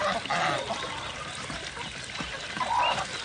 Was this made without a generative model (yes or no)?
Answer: yes